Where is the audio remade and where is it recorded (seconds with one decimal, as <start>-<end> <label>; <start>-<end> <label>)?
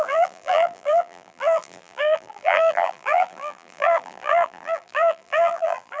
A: 0.0-6.0 remade